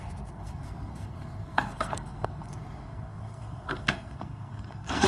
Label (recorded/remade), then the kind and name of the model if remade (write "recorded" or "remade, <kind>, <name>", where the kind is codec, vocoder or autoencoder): remade, codec, SNAC